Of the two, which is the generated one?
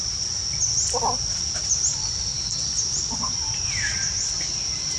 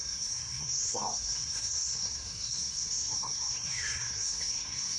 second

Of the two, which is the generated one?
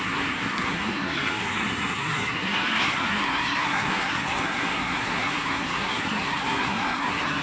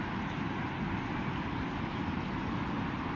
first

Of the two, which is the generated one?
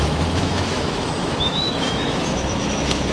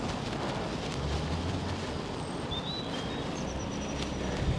first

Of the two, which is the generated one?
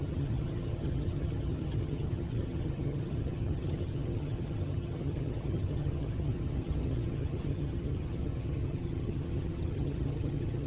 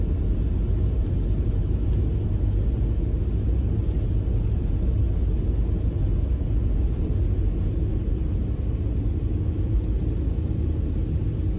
first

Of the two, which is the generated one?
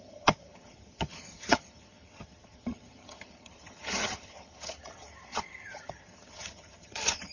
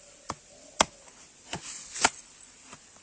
first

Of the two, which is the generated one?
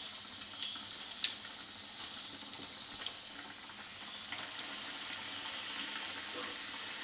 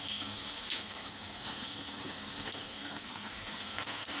second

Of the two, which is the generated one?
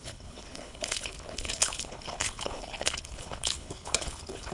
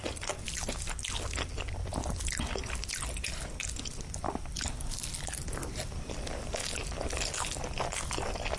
first